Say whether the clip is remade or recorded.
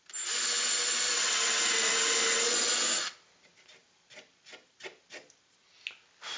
recorded